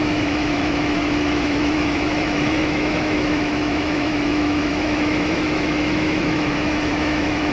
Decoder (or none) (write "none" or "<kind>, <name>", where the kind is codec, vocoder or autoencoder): autoencoder, DAC-VAE